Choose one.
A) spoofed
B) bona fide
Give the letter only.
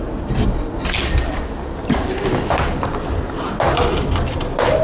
B